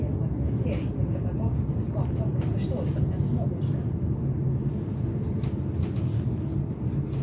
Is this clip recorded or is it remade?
recorded